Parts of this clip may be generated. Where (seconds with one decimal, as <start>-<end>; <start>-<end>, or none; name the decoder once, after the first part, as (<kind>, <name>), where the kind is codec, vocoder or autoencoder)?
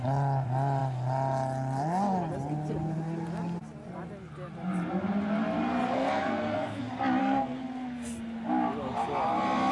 5.6-6.8 (codec, SNAC); 7.2-8.2